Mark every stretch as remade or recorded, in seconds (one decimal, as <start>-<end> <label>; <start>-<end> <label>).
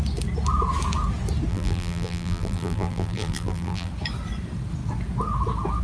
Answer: 0.0-1.5 recorded; 1.5-3.9 remade; 3.9-5.8 recorded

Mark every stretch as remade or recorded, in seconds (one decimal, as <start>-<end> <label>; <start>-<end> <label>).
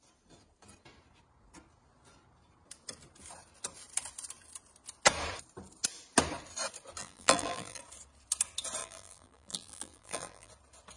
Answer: 0.0-7.0 recorded; 7.0-7.8 remade; 7.8-8.8 recorded; 8.8-10.5 remade; 10.5-11.0 recorded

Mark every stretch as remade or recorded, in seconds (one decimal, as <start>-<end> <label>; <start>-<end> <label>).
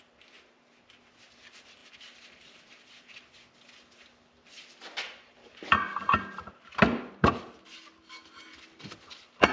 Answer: 0.0-1.8 recorded; 1.8-6.5 remade; 6.5-8.5 recorded; 8.5-9.5 remade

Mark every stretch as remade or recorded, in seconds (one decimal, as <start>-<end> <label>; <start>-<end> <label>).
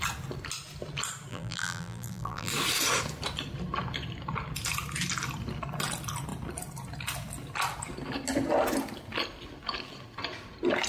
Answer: 0.0-1.3 recorded; 1.3-2.5 remade; 2.5-10.9 recorded